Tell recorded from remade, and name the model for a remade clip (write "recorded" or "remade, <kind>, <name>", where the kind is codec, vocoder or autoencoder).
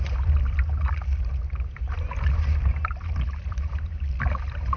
recorded